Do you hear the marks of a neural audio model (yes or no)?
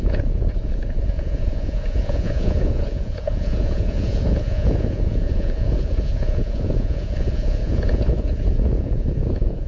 yes